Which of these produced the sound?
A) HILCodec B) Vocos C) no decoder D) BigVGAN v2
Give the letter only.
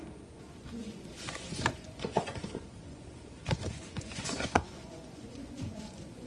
B